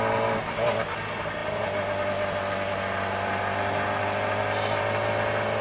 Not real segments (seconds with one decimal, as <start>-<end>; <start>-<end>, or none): none